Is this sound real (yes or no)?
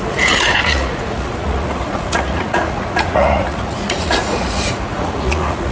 no